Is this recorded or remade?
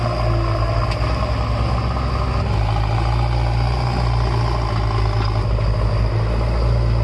recorded